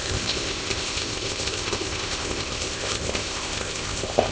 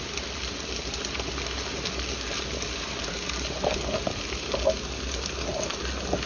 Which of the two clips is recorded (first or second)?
second